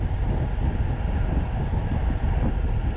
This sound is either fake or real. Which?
real